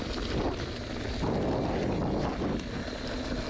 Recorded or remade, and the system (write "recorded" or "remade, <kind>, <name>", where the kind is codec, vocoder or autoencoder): recorded